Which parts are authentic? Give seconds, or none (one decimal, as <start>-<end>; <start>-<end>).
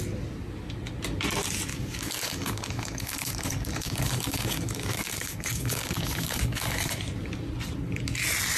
0.0-1.7; 6.9-8.6